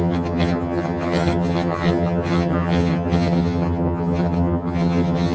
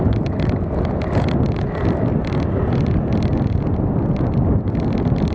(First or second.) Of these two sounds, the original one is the second